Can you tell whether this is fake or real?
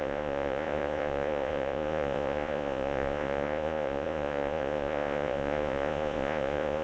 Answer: fake